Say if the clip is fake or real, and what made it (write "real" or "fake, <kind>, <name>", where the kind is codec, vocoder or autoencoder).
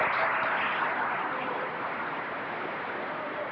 real